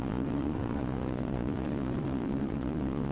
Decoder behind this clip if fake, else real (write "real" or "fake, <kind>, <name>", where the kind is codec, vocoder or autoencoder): fake, vocoder, Vocos